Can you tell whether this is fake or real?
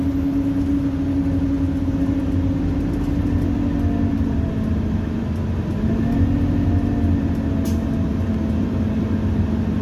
real